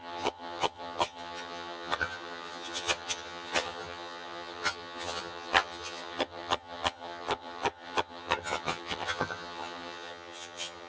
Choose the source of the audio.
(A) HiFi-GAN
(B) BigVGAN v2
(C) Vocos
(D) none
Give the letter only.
A